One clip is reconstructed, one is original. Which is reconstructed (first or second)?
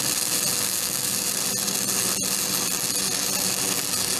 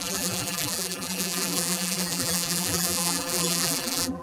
second